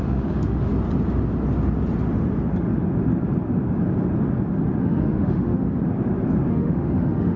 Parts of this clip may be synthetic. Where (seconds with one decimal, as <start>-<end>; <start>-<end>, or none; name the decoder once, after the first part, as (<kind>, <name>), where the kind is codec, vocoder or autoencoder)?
0.0-0.7 (autoencoder, DAC-VAE); 4.8-5.8; 6.5-7.4